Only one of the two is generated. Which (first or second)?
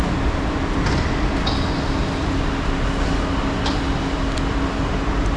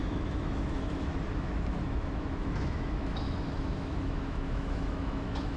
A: second